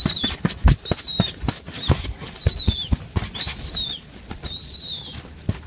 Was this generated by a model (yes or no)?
no